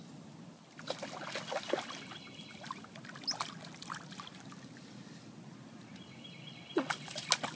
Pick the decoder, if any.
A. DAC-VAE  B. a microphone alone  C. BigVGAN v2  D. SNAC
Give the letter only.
B